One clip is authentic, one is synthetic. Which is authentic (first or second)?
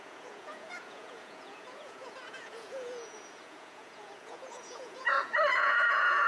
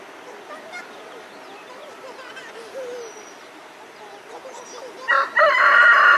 second